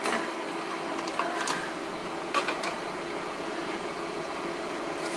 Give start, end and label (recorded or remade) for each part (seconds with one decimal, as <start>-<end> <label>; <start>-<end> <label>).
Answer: 0.0-2.0 recorded; 2.0-5.2 remade